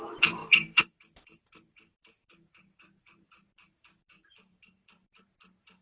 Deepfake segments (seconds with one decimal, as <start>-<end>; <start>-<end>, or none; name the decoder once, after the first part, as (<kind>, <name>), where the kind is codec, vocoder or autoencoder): 0.0-5.8 (vocoder, BigVGAN v2)